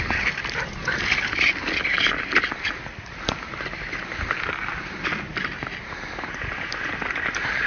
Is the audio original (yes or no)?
yes